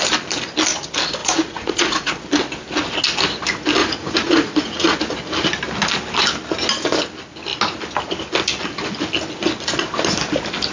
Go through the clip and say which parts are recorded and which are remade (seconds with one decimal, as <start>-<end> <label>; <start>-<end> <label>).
0.0-1.2 recorded; 1.2-2.1 remade; 2.1-3.8 recorded; 3.8-5.0 remade; 5.0-10.7 recorded